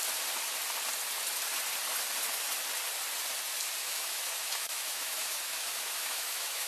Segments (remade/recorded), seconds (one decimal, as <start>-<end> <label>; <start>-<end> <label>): 0.0-3.8 recorded; 3.8-6.7 remade